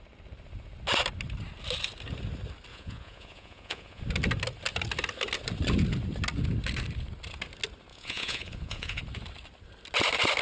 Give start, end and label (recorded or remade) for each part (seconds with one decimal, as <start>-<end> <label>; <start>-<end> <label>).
0.0-2.7 recorded; 2.7-4.0 remade; 4.0-7.9 recorded; 7.9-9.0 remade; 9.0-10.4 recorded